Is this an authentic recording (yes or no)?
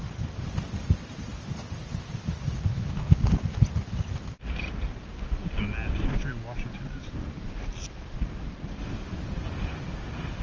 yes